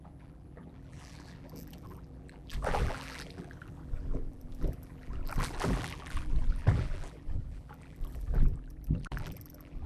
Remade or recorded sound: remade